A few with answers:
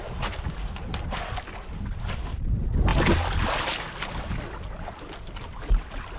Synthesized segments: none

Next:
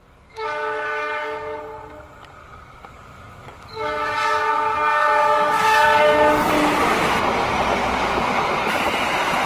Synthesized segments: 0.0-1.6 (codec, DAC); 2.4-6.5; 7.8-8.5

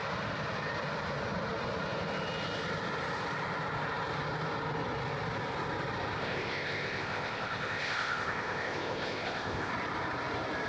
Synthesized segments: 6.2-9.7 (codec, ZipCodec)

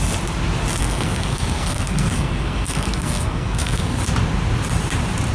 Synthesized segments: 0.8-4.0 (codec, SNAC)

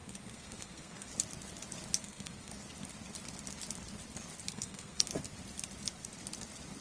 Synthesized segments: 0.0-1.1 (codec, SNAC); 2.0-2.5; 4.5-5.1

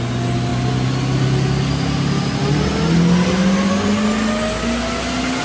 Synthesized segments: none

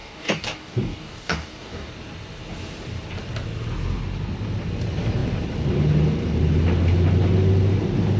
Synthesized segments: 0.0-1.9 (codec, DAC)